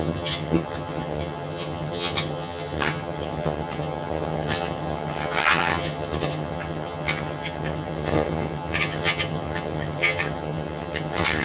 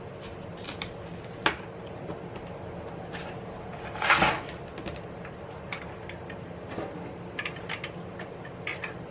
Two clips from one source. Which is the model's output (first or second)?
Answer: first